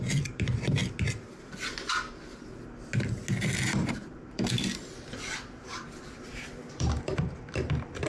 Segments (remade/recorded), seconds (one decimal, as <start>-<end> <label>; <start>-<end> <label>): 0.0-0.8 remade; 0.8-3.4 recorded; 3.4-8.1 remade